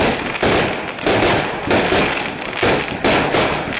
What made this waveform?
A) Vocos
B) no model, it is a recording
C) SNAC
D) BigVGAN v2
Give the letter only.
B